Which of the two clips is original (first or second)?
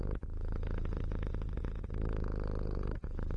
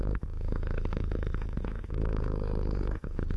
first